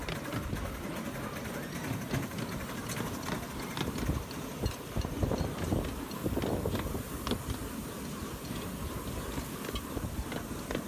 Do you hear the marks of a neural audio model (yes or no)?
no